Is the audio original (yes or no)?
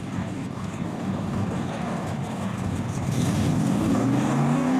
no